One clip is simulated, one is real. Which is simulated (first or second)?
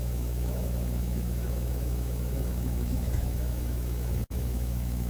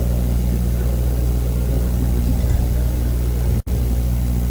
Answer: first